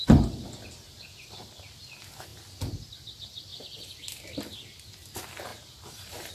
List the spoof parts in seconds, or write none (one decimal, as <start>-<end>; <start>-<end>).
5.5-6.3